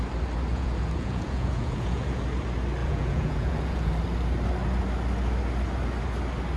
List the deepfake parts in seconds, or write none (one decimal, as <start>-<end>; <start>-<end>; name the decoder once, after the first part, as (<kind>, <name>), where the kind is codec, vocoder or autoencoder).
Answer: 0.5-2.2 (vocoder, Vocos); 2.8-3.9

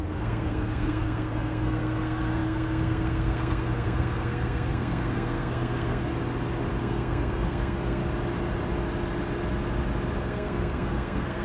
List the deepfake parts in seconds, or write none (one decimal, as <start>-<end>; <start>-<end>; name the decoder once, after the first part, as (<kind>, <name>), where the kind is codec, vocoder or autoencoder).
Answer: 0.0-6.1 (codec, SNAC); 6.8-8.0; 10.2-11.4

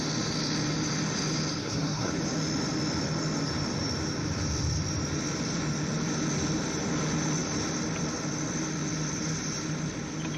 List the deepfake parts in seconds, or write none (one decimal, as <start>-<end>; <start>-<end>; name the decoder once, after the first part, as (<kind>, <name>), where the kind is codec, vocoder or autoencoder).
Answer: 1.6-2.1 (codec, SNAC)

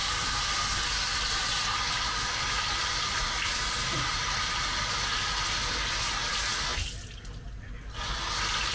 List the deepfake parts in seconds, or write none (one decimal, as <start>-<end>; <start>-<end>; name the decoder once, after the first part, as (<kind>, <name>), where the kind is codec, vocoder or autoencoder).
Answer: none

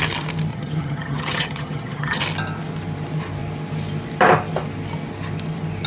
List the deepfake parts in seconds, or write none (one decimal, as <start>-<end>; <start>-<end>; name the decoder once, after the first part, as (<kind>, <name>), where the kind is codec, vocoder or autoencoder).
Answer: 0.5-2.2 (vocoder, HiFi-GAN)

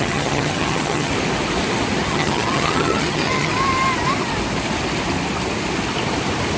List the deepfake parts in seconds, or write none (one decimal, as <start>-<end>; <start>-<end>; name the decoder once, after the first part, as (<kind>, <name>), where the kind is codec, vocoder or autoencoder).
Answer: 0.0-1.1 (vocoder, HiFi-GAN); 2.1-3.5

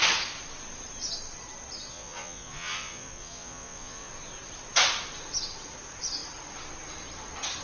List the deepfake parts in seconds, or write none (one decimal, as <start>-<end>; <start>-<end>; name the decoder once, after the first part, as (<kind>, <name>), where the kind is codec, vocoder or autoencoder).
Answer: 1.9-4.1 (vocoder, Vocos)

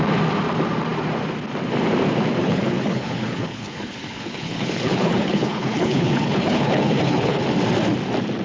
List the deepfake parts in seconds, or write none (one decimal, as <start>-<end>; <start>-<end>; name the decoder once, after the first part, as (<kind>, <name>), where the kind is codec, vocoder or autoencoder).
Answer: 2.4-7.4 (codec, HILCodec)